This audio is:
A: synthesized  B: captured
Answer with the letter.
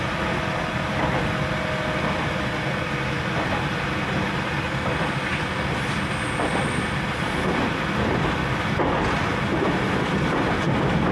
B